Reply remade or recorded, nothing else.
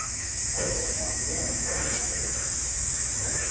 remade